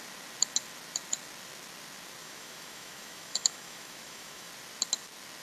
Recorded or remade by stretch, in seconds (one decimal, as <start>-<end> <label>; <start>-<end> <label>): 0.0-2.2 recorded; 2.2-4.5 remade; 4.5-5.4 recorded